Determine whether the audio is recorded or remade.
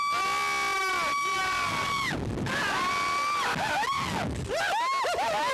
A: recorded